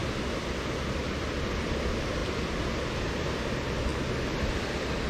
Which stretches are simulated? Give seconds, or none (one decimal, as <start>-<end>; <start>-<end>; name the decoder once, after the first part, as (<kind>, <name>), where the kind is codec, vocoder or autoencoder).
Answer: none